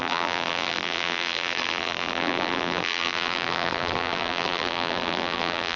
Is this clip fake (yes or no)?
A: yes